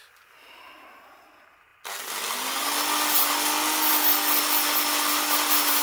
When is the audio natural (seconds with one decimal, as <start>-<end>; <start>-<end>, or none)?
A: 0.0-5.8